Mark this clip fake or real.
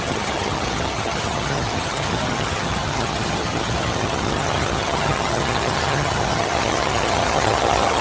fake